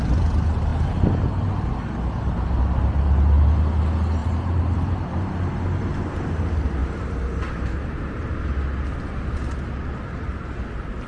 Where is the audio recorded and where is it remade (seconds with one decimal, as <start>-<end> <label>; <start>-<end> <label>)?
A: 0.0-4.2 recorded; 4.2-5.3 remade; 5.3-11.1 recorded